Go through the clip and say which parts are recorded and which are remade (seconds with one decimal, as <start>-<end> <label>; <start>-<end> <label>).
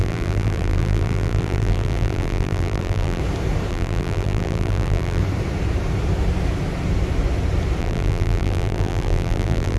0.0-3.2 remade; 3.2-3.7 recorded; 3.7-5.2 remade; 5.2-7.8 recorded; 7.8-9.8 remade